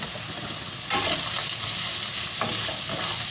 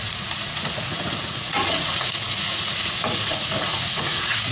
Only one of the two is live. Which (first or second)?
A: first